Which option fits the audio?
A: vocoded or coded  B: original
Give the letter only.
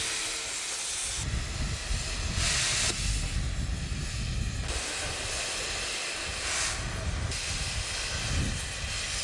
B